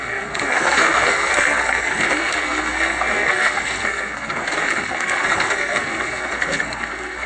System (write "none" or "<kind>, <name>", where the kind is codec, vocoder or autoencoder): codec, SNAC